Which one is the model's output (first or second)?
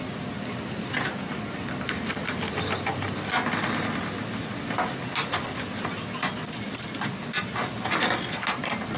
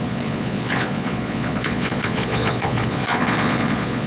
second